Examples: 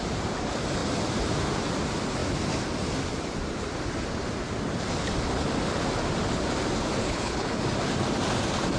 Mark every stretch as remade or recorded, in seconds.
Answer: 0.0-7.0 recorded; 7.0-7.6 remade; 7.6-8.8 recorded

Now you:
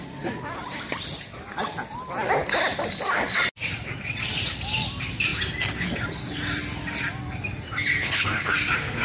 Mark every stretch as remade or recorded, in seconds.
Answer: 0.0-8.0 recorded; 8.0-8.5 remade; 8.5-9.0 recorded

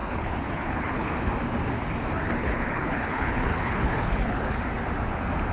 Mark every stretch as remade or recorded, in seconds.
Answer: 0.0-1.1 remade; 1.1-2.4 recorded; 2.4-4.6 remade; 4.6-5.5 recorded

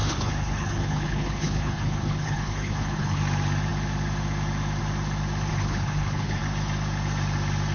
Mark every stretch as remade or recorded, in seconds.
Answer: 0.0-3.2 remade; 3.2-5.5 recorded; 5.5-6.4 remade; 6.4-7.7 recorded

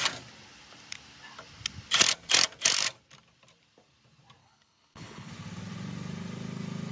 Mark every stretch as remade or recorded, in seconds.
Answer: 0.0-4.4 recorded; 4.4-5.3 remade; 5.3-6.9 recorded

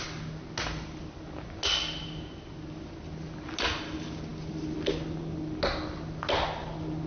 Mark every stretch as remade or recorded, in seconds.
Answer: 0.0-7.1 recorded